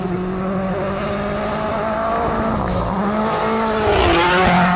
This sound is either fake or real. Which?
real